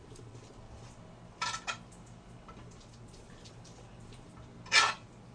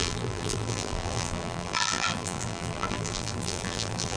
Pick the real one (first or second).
first